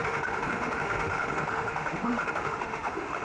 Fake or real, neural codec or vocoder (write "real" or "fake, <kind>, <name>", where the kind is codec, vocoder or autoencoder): fake, autoencoder, DAC-VAE